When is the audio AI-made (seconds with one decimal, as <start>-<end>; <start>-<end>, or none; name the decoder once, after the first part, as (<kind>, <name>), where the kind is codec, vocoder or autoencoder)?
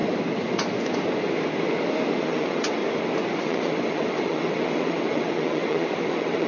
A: 2.2-2.8 (vocoder, WaveNeXt); 3.4-6.5